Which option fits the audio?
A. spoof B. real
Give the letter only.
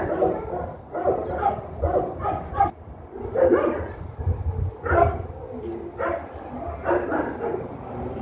B